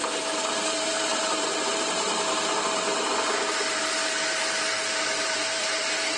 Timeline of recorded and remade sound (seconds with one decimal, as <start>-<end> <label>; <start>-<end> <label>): 0.0-0.5 recorded; 0.5-4.0 remade; 4.0-5.2 recorded; 5.2-6.2 remade